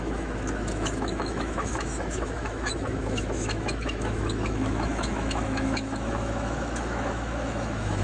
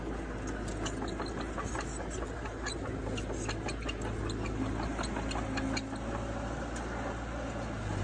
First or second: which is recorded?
second